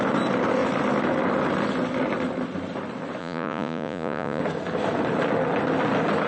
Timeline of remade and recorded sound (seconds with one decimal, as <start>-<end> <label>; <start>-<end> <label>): 0.0-3.2 recorded; 3.2-4.4 remade; 4.4-6.3 recorded